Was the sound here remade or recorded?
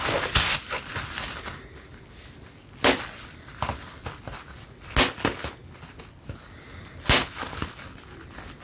recorded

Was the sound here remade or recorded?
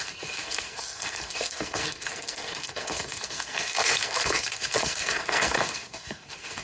remade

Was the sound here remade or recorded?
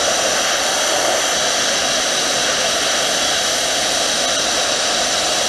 recorded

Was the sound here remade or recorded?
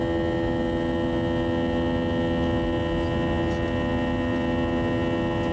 recorded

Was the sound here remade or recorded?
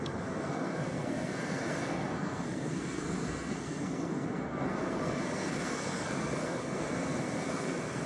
remade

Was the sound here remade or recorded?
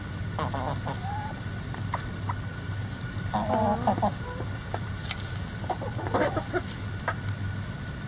recorded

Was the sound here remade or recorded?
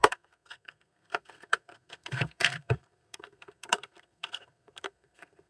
remade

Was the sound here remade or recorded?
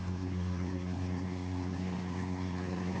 remade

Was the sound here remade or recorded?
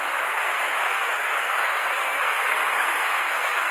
remade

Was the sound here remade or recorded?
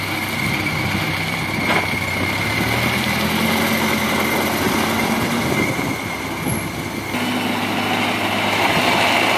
recorded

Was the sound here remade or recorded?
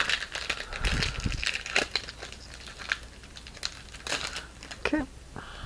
recorded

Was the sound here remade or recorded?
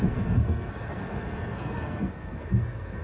remade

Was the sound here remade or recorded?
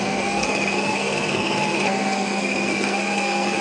remade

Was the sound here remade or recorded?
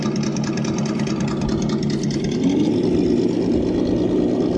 recorded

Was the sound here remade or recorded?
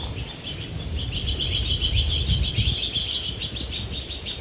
recorded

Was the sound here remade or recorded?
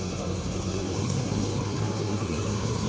remade